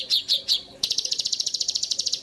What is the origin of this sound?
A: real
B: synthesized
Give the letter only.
B